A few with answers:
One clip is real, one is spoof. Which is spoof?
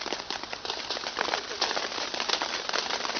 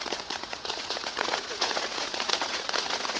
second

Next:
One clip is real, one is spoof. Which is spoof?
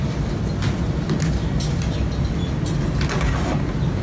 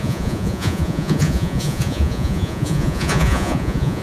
second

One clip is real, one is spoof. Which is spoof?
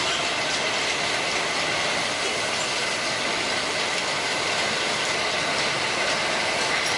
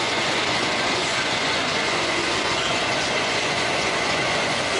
second